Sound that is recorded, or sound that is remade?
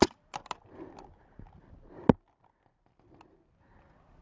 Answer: recorded